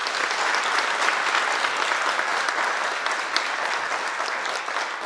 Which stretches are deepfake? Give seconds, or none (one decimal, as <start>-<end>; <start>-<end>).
none